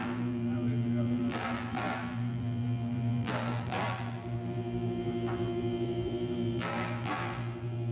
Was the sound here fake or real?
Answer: fake